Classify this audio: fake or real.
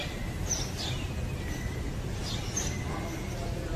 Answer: real